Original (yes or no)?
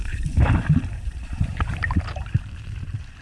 no